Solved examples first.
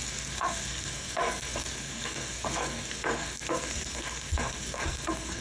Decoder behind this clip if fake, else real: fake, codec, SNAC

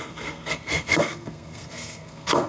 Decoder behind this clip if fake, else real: fake, codec, SNAC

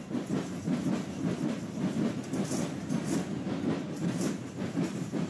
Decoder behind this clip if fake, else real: real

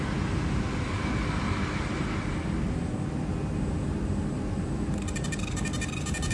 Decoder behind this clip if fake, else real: real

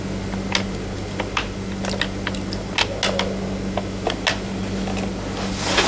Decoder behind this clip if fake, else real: real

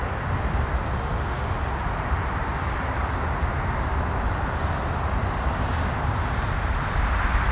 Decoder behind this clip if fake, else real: real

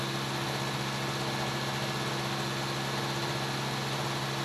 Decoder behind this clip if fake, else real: real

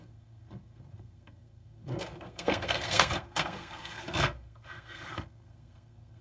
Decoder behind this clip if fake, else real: fake, codec, SNAC